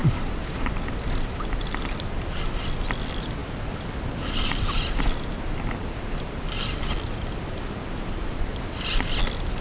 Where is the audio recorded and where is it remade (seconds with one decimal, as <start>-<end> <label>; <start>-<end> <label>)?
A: 0.0-1.3 remade; 1.3-3.4 recorded; 3.4-5.0 remade; 5.0-9.6 recorded